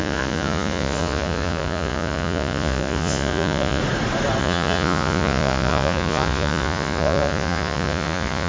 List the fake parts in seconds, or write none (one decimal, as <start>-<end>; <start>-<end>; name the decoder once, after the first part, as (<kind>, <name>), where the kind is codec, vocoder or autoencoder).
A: 0.0-3.8 (vocoder, Vocos); 4.4-8.5